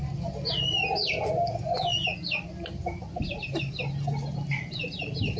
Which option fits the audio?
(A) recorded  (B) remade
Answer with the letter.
A